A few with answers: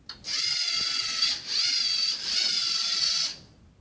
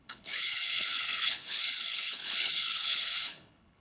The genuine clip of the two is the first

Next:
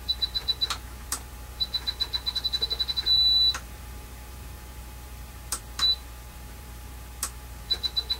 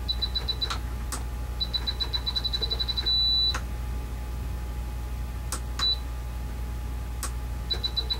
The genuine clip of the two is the second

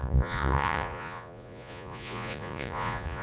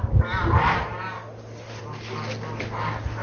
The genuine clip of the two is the second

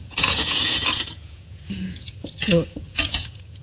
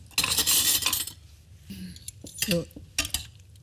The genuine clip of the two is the second